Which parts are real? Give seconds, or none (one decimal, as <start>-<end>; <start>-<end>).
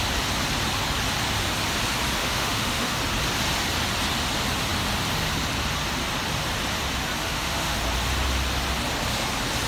0.0-2.2; 3.0-7.2; 7.8-9.7